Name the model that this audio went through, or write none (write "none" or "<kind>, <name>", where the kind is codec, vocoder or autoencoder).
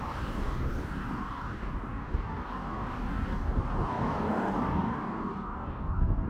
codec, DAC